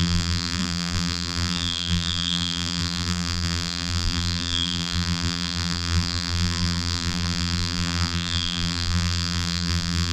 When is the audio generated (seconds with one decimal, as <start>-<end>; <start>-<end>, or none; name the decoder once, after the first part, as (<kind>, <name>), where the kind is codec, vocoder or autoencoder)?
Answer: 0.0-10.1 (vocoder, BigVGAN v2)